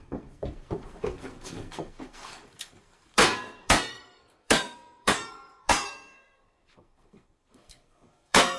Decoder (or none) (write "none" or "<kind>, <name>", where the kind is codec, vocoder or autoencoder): codec, SNAC